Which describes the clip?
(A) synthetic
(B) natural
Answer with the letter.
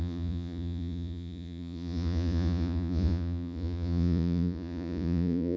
A